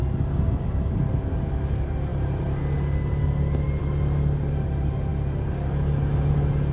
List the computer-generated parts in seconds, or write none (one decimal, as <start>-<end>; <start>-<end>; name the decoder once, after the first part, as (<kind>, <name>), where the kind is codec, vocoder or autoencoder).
none